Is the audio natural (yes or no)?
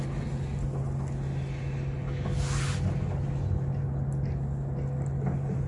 yes